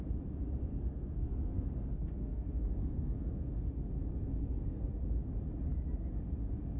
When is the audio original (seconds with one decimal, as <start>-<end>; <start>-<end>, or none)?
0.0-0.7; 3.7-4.4; 5.0-6.8